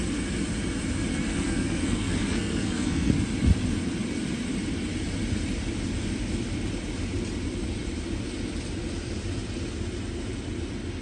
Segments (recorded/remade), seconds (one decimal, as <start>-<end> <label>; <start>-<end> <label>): 0.0-1.1 recorded; 1.1-3.1 remade; 3.1-11.0 recorded